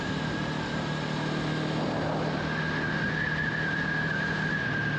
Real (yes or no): yes